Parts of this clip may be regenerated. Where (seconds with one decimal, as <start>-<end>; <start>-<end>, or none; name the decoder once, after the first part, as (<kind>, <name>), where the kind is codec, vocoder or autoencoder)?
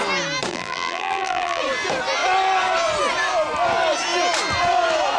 0.5-1.6 (vocoder, BigVGAN v2)